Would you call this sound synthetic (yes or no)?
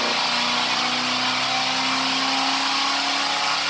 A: no